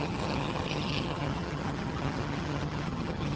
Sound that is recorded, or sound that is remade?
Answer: remade